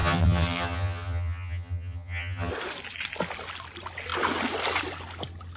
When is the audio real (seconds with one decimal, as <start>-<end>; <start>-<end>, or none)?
2.5-5.6

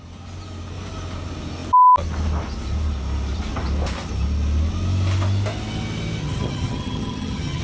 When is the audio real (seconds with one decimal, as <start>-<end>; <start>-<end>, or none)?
0.0-6.2

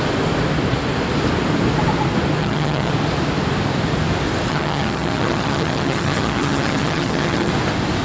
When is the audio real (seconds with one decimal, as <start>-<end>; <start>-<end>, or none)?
0.0-2.4; 2.9-4.5; 7.5-8.0

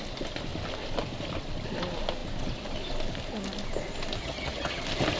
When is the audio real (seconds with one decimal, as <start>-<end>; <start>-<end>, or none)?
0.0-4.2; 4.8-5.2